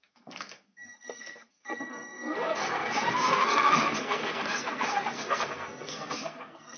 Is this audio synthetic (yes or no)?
yes